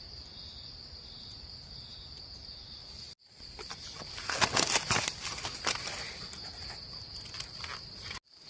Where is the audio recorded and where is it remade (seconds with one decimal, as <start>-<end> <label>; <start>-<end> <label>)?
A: 0.0-8.5 recorded